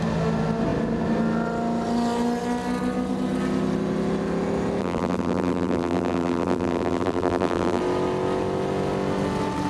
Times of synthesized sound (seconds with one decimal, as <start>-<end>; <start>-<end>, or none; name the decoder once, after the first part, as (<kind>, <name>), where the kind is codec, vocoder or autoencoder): 4.8-7.8 (vocoder, BigVGAN v2)

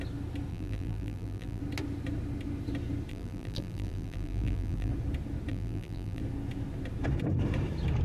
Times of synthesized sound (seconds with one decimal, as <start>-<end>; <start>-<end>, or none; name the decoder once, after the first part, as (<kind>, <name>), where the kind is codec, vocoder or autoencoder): 0.5-1.6 (vocoder, BigVGAN v2); 3.1-4.9; 5.5-6.2

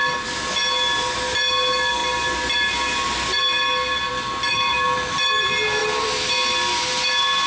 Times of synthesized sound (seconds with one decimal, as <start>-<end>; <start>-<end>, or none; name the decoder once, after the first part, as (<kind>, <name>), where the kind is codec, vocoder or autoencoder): 4.5-5.3 (vocoder, BigVGAN v2); 5.8-6.3

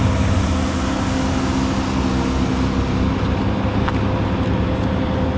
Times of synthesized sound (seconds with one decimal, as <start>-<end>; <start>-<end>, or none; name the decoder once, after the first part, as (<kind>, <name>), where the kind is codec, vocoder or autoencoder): none

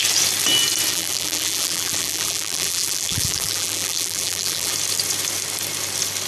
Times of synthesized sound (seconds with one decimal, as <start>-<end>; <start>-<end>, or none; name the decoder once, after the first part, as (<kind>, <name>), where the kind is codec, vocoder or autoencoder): 0.9-4.7 (vocoder, BigVGAN v2)